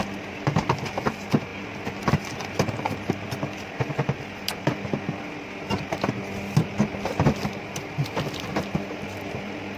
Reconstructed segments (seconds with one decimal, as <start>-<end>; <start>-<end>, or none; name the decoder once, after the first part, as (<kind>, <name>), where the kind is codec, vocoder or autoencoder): none